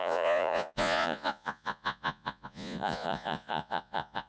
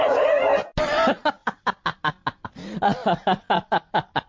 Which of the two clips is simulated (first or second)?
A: first